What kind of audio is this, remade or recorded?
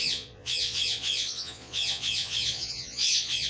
remade